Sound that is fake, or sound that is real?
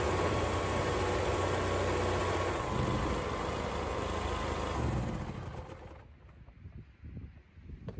real